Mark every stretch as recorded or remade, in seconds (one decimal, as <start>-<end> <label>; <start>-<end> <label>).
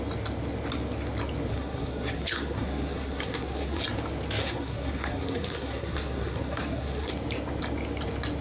0.0-1.5 recorded; 1.5-3.8 remade; 3.8-4.4 recorded; 4.4-7.1 remade; 7.1-8.4 recorded